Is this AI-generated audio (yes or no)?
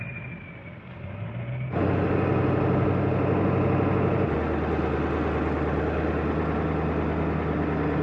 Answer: no